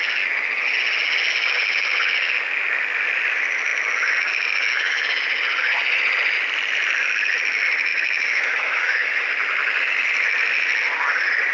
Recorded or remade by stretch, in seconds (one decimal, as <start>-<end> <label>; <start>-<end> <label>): 0.0-7.9 recorded; 7.9-9.3 remade; 9.3-11.5 recorded